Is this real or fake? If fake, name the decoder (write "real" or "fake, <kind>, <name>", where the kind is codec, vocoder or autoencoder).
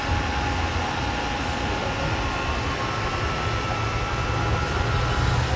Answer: real